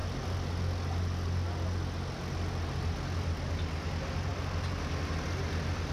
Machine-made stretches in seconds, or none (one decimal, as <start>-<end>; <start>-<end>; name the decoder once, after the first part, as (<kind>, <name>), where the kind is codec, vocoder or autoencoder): none